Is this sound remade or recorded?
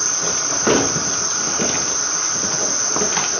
recorded